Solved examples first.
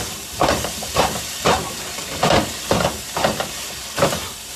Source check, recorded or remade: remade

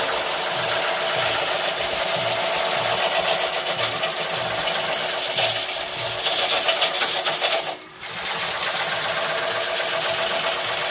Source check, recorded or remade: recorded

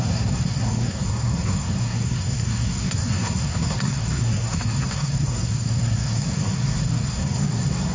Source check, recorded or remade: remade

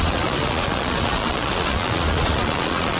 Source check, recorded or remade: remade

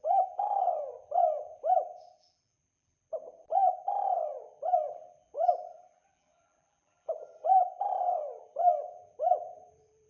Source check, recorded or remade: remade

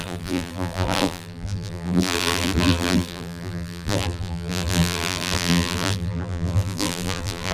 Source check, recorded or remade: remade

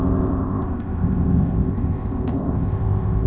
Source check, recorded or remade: remade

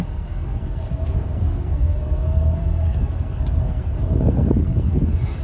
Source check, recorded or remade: remade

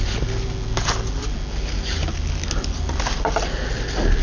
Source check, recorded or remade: recorded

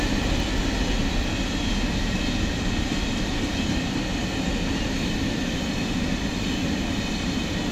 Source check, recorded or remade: recorded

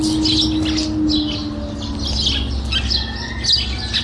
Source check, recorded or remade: recorded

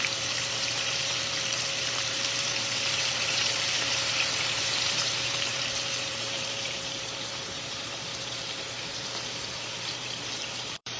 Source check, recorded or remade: remade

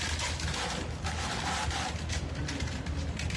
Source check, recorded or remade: recorded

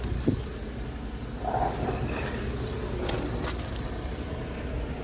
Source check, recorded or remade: recorded